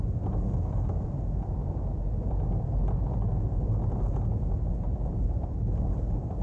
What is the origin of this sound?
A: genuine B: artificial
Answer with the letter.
A